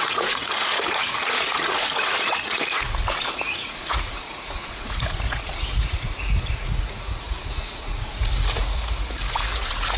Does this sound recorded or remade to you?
remade